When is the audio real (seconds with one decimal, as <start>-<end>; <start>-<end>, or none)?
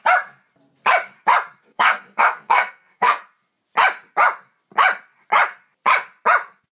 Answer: 0.0-1.6; 3.2-6.8